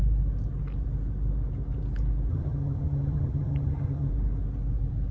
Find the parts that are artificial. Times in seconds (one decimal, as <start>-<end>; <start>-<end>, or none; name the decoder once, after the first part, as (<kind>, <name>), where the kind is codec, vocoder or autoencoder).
2.3-4.1 (vocoder, HiFi-GAN)